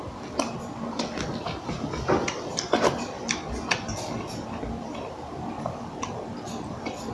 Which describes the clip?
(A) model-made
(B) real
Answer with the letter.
B